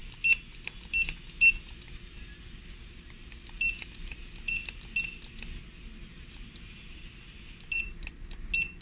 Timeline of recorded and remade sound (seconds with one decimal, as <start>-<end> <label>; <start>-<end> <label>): 0.0-6.0 recorded; 6.0-6.9 remade; 6.9-8.8 recorded